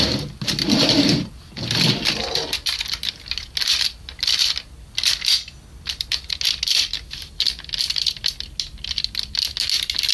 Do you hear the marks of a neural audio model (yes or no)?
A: no